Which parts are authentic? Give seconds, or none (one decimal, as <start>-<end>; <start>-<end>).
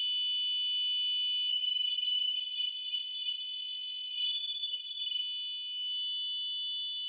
0.0-1.5; 5.2-7.1